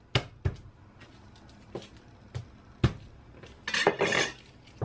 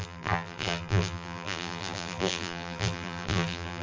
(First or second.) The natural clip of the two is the first